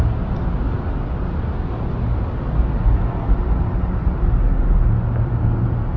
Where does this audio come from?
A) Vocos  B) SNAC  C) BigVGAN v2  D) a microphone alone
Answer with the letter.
D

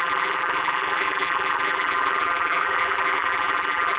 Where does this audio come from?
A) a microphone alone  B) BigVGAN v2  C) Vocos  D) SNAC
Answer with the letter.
B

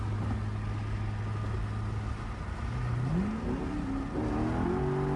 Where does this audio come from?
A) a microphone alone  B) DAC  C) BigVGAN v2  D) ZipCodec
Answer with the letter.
A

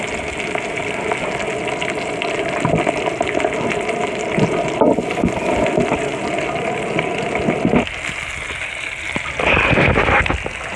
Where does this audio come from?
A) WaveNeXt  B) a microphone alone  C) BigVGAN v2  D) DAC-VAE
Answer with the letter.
B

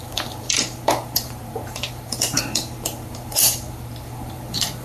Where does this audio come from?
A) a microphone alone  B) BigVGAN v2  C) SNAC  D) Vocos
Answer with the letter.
B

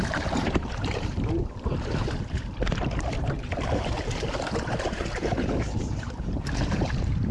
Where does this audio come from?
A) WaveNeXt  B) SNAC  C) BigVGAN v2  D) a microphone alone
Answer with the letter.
C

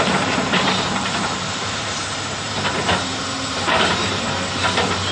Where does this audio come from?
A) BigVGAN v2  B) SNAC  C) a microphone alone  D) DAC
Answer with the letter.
A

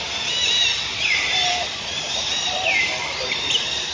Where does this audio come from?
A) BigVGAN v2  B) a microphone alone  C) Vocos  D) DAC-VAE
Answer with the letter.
A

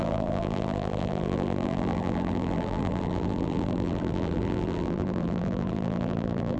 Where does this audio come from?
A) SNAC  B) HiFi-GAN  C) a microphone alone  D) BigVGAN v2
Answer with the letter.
D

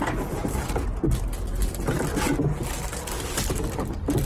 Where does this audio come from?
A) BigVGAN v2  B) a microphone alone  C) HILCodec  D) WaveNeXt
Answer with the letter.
B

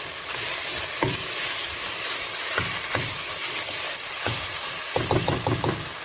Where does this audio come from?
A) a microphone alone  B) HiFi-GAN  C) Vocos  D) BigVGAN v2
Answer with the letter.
A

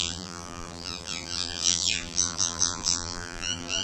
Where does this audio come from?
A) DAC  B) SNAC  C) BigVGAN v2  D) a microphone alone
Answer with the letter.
C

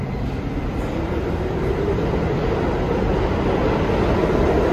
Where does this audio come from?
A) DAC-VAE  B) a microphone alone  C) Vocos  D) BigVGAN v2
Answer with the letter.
B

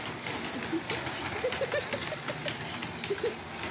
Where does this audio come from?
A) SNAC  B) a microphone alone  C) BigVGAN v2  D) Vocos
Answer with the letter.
B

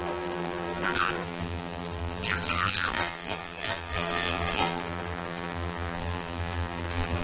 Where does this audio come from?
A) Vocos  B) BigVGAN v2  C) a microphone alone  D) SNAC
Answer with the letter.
B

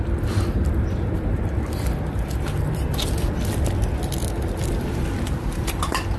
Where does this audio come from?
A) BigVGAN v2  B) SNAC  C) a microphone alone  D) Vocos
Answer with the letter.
A